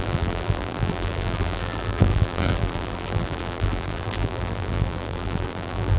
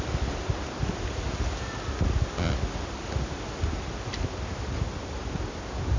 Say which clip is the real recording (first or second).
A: second